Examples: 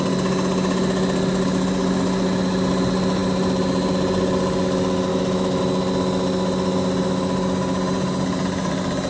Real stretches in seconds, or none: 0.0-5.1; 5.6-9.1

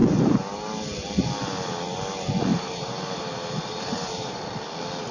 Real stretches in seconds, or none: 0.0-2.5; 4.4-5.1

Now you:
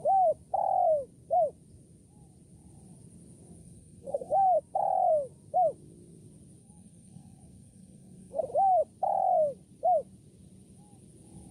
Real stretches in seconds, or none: 0.0-3.6; 4.6-6.6; 8.4-11.5

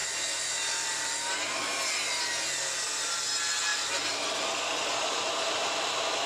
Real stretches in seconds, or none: 2.2-3.7; 5.3-6.3

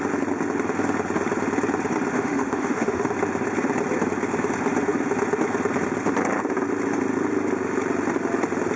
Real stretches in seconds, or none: 0.0-2.1; 3.1-8.8